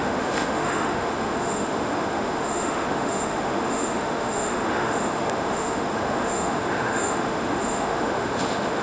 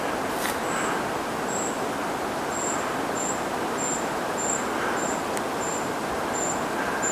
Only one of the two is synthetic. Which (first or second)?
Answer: first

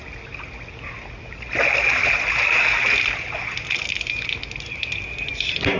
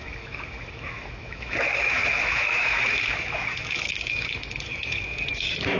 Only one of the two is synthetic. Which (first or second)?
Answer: second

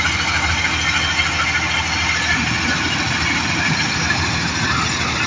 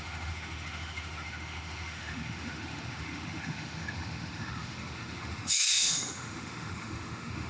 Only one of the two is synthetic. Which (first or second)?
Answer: second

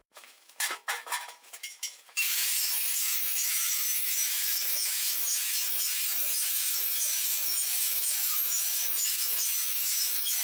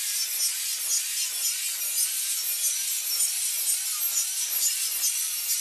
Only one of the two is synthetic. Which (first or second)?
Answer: first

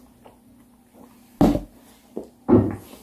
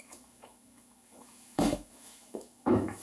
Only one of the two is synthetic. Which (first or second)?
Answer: second